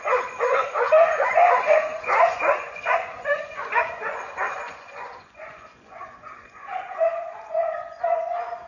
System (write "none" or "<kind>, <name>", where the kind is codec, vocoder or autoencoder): vocoder, Vocos